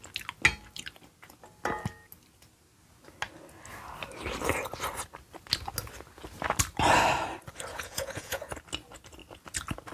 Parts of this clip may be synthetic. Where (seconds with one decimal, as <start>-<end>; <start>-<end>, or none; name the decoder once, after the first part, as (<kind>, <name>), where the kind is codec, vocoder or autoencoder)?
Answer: 7.7-8.5 (vocoder, Vocos)